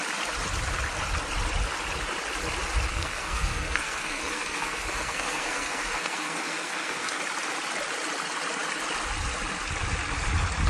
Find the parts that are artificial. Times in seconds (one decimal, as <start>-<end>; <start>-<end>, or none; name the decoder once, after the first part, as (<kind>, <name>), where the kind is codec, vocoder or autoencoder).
2.9-7.2 (codec, SNAC)

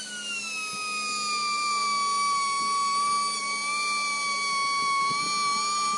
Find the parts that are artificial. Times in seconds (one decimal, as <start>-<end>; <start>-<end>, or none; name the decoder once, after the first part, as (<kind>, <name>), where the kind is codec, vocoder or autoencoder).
none